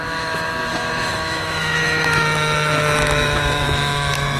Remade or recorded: remade